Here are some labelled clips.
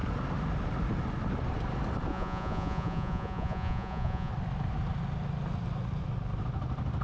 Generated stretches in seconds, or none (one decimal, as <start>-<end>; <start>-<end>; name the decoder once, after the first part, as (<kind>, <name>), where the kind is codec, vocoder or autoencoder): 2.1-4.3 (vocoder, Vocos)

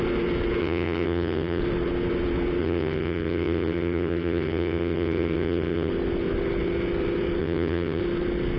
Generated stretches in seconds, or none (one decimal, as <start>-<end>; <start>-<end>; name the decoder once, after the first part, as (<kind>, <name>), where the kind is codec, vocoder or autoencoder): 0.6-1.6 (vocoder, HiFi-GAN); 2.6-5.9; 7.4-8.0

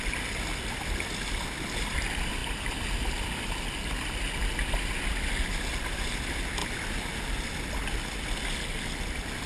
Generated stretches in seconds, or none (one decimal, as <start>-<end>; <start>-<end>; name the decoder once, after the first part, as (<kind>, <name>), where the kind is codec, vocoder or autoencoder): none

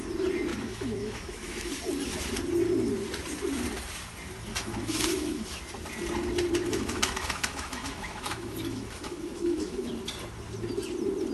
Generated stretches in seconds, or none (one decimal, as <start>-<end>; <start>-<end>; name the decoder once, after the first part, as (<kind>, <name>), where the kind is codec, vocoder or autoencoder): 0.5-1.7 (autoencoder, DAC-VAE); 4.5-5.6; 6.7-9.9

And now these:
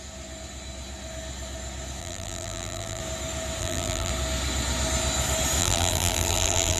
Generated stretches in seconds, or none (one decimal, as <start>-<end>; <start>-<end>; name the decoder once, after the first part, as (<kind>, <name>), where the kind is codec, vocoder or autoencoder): 2.0-3.0 (vocoder, BigVGAN v2); 3.6-4.1; 5.6-6.8

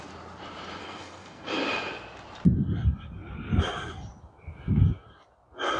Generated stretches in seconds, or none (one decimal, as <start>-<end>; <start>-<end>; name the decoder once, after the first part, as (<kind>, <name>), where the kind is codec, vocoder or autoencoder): 0.8-1.5 (codec, SNAC)

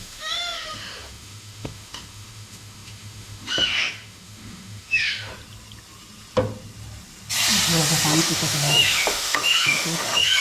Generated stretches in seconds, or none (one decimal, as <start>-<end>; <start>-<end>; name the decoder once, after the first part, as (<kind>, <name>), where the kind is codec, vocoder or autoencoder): 0.0-5.3 (autoencoder, DAC-VAE); 8.2-10.4

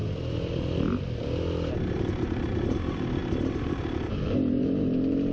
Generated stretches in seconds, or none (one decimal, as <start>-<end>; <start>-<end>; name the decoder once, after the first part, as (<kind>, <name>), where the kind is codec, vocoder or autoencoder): 1.9-5.3 (vocoder, BigVGAN v2)